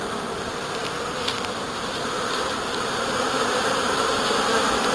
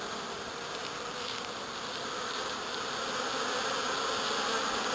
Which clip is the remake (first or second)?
first